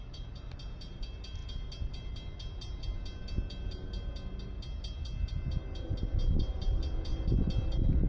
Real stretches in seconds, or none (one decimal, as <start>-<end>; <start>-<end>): 0.0-8.1